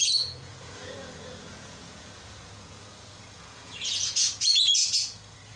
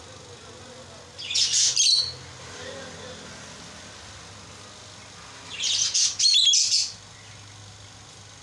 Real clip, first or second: second